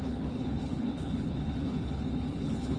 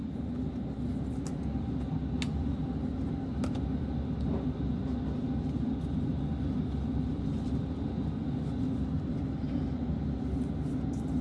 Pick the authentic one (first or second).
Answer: second